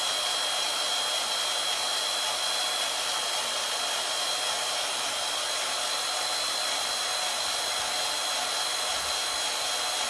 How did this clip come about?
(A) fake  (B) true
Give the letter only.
B